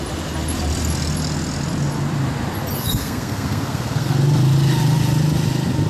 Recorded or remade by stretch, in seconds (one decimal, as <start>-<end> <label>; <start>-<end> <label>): 0.0-2.8 recorded; 2.8-4.1 remade; 4.1-5.9 recorded